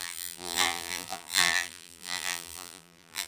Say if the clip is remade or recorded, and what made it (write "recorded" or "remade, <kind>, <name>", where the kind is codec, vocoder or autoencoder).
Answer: remade, vocoder, BigVGAN v2